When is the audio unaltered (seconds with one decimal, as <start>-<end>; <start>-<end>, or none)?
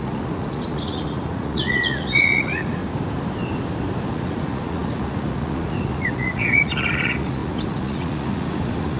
2.8-4.1